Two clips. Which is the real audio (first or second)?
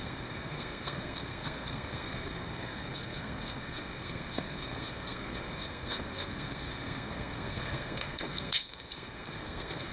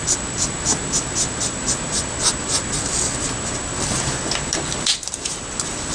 second